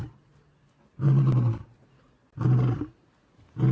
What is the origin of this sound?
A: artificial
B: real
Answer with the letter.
B